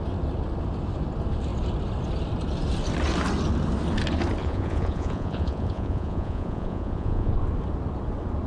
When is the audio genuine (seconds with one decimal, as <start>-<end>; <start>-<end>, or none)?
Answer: 0.0-4.4; 7.3-8.5